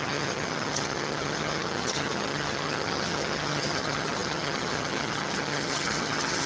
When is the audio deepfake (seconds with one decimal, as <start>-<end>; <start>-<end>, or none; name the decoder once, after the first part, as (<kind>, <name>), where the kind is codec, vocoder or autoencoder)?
0.0-6.5 (vocoder, HiFi-GAN)